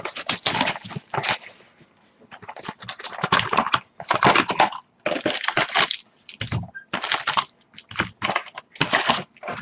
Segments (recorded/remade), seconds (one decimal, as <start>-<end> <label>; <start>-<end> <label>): 0.0-2.9 recorded; 2.9-7.2 remade; 7.2-9.6 recorded